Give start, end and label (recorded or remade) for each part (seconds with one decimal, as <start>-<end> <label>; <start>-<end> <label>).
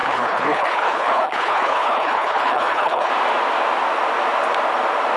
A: 0.0-3.1 remade; 3.1-5.2 recorded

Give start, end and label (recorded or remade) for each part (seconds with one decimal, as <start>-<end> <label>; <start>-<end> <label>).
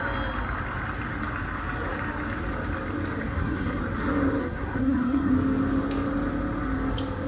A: 0.0-3.3 recorded; 3.3-3.8 remade; 3.8-4.4 recorded; 4.4-5.3 remade; 5.3-7.3 recorded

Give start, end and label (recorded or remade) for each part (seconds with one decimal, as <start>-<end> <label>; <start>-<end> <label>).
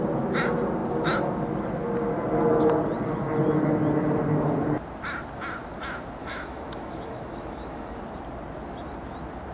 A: 0.0-6.2 recorded; 6.2-8.0 remade; 8.0-9.5 recorded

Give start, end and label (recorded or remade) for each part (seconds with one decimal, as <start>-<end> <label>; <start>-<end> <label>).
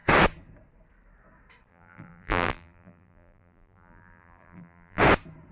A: 0.0-1.7 recorded; 1.7-5.0 remade; 5.0-5.5 recorded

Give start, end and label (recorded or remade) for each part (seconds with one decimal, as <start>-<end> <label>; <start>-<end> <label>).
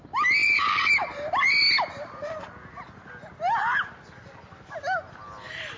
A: 0.0-5.8 recorded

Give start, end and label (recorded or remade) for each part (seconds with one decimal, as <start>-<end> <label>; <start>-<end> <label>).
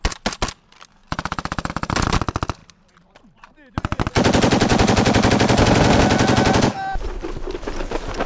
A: 0.0-8.3 recorded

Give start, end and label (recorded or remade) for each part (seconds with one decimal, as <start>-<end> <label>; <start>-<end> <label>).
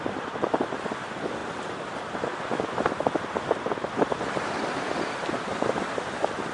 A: 0.0-6.5 recorded